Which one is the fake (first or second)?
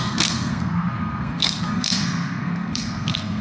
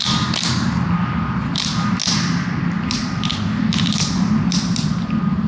first